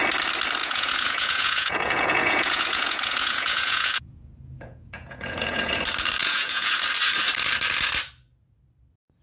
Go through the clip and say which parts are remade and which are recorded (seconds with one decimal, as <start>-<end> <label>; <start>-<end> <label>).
0.0-0.6 recorded; 0.6-5.7 remade; 5.7-6.2 recorded; 6.2-6.7 remade; 6.7-9.2 recorded